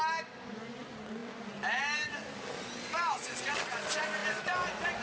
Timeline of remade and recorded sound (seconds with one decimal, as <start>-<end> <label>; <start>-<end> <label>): 0.0-5.0 recorded